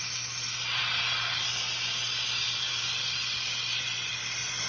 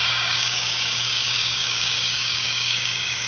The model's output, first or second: second